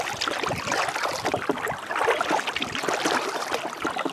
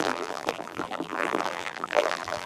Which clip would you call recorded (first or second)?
first